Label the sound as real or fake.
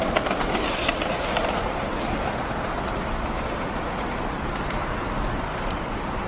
real